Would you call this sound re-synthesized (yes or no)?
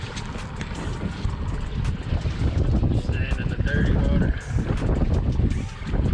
no